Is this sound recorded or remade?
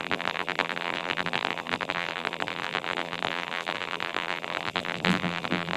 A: remade